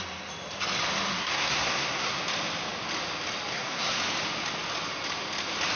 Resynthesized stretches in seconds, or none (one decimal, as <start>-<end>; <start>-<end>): 1.1-2.2; 3.5-4.0